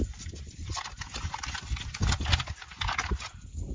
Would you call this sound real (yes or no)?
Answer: yes